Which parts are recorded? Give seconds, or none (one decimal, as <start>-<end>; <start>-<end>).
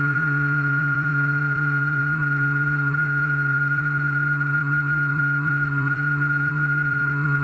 none